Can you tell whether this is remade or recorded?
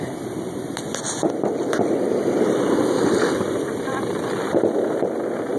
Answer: recorded